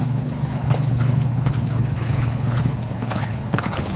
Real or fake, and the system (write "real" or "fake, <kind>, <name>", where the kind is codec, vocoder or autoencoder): fake, codec, HILCodec